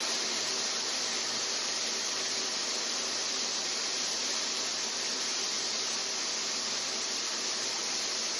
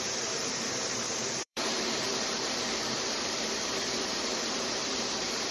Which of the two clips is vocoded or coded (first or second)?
second